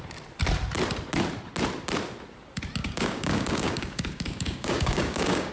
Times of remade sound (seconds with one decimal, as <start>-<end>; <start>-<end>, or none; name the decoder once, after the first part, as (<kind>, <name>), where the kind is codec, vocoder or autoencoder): 2.8-5.5 (codec, DAC)